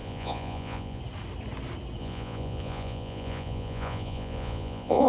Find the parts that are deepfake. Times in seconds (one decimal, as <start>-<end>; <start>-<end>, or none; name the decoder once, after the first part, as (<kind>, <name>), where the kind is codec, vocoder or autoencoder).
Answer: 0.0-1.0 (vocoder, Vocos); 2.0-5.1